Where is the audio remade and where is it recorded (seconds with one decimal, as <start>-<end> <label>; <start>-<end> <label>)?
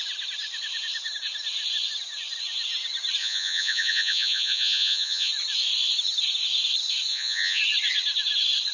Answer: 0.0-3.2 recorded; 3.2-5.3 remade; 5.3-7.1 recorded; 7.1-7.6 remade; 7.6-8.7 recorded